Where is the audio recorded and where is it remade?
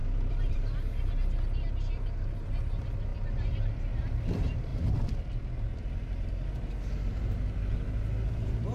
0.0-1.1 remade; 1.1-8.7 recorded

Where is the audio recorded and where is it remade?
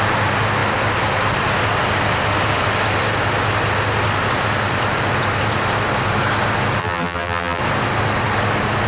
0.0-6.8 recorded; 6.8-7.6 remade; 7.6-8.9 recorded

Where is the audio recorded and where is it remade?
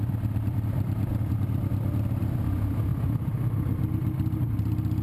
0.0-1.1 recorded; 1.1-1.7 remade; 1.7-2.9 recorded; 2.9-3.9 remade; 3.9-5.0 recorded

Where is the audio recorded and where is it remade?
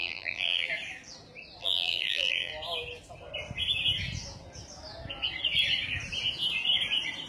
0.0-0.7 remade; 0.7-1.6 recorded; 1.6-2.5 remade; 2.5-7.3 recorded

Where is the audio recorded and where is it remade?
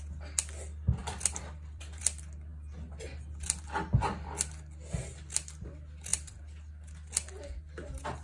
0.0-1.0 recorded; 1.0-2.0 remade; 2.0-6.1 recorded; 6.1-6.7 remade; 6.7-8.2 recorded